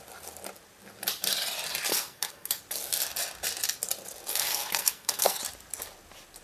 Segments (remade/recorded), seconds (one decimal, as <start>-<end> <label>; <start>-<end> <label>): 0.0-1.9 recorded; 1.9-2.6 remade; 2.6-4.3 recorded; 4.3-5.4 remade; 5.4-6.4 recorded